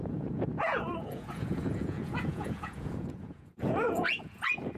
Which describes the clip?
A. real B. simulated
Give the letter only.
B